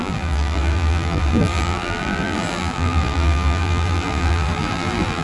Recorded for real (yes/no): no